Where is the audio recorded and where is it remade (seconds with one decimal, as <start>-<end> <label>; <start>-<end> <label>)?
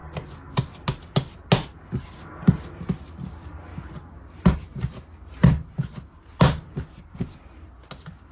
0.0-8.3 recorded